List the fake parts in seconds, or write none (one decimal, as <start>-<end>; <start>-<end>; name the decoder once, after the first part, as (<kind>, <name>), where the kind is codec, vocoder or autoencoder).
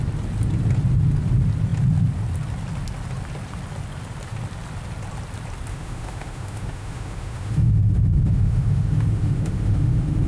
5.7-10.3 (autoencoder, DAC-VAE)